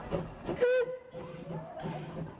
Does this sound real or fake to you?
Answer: real